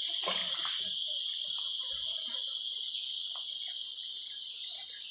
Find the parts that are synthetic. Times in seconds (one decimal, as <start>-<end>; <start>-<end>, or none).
none